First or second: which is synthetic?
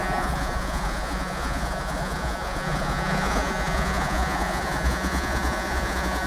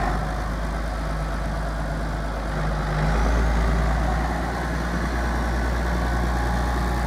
first